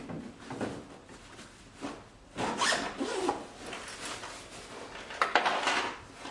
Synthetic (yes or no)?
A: no